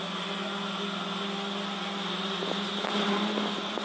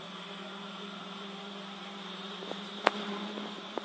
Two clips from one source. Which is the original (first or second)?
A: first